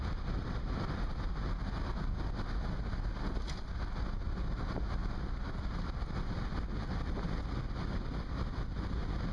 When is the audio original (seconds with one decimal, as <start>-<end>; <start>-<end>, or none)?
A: 0.0-5.0; 5.5-9.3